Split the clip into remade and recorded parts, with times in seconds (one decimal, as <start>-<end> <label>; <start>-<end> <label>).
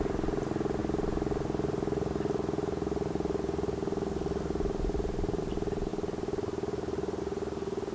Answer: 0.0-7.9 recorded